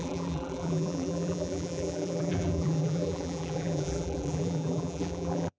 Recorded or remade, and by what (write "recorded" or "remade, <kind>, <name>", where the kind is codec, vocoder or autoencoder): remade, vocoder, BigVGAN v2